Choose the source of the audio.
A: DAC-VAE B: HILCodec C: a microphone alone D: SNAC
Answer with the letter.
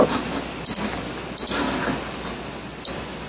C